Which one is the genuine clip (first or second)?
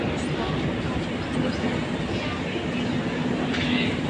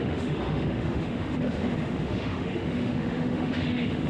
first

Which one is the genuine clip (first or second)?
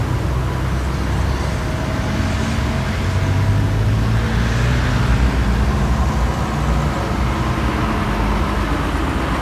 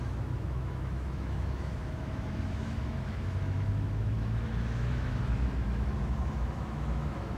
first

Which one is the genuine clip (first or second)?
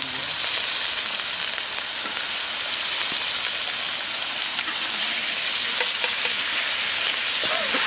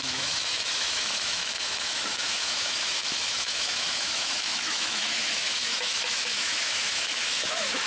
first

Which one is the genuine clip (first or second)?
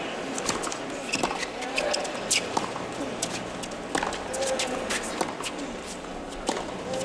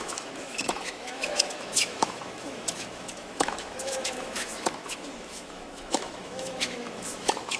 first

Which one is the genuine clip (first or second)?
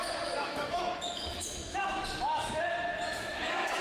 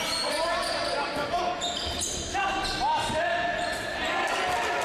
second